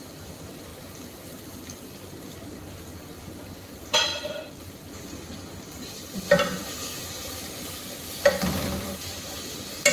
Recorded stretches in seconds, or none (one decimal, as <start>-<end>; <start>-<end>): 0.7-3.3; 4.1-4.6